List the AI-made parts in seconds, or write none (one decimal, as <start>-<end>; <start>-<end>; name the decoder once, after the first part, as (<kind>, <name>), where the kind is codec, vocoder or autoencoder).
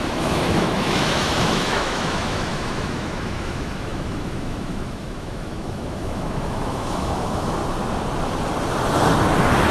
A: 0.0-7.6 (autoencoder, DAC-VAE)